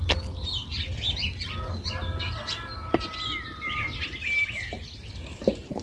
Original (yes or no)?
yes